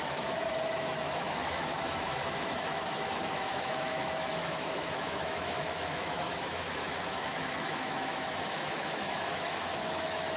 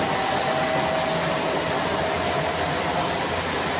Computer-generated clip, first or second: first